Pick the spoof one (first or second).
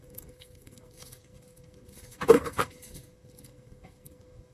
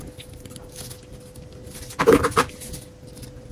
first